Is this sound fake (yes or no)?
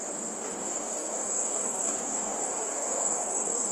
yes